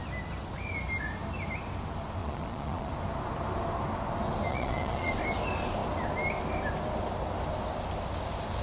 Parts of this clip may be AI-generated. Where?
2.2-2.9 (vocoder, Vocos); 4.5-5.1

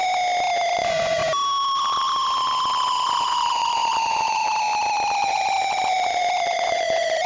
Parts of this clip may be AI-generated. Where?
0.7-1.2 (vocoder, Vocos); 2.8-4.5; 5.2-7.3

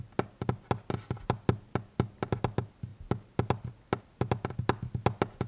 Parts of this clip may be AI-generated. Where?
none

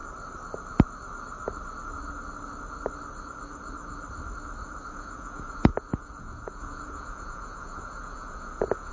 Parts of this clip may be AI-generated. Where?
4.9-8.9 (vocoder, Vocos)

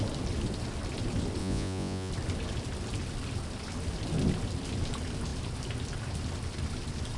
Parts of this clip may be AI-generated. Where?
1.4-2.1 (vocoder, Vocos)

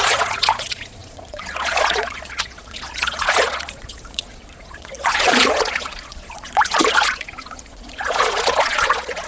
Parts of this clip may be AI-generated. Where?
0.0-9.3 (vocoder, Vocos)

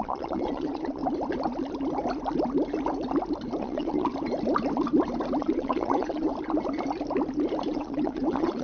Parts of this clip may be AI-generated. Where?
0.0-1.0 (vocoder, Vocos); 3.6-4.1; 5.4-6.3; 7.7-8.6